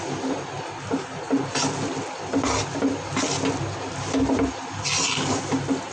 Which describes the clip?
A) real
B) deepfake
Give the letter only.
A